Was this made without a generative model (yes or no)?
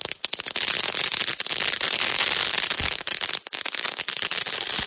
yes